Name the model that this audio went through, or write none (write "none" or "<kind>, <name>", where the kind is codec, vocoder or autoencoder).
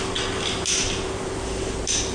none